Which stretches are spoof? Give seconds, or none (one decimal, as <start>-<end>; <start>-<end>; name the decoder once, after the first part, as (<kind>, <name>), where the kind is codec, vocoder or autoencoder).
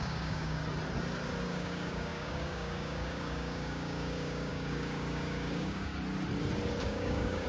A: 0.0-0.6 (codec, DAC); 1.4-5.9; 6.8-7.5